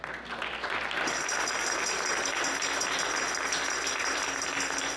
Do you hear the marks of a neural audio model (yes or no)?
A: no